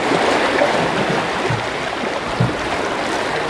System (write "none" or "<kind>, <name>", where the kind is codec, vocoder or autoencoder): none